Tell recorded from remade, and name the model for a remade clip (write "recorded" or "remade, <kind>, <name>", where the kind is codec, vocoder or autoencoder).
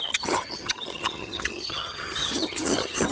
remade, vocoder, HiFi-GAN